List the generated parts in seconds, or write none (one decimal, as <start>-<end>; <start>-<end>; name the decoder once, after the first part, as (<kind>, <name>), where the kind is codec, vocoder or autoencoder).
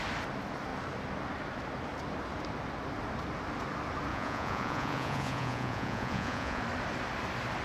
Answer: 4.1-6.6 (vocoder, Vocos)